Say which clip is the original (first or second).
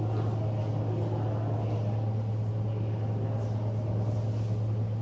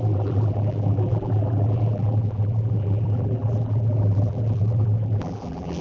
first